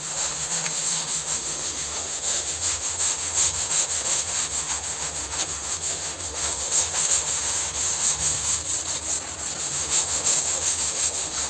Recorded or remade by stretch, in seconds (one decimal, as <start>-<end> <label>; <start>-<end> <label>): 0.0-8.6 remade; 8.6-9.6 recorded; 9.6-11.5 remade